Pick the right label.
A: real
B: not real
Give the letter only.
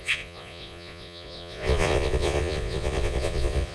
B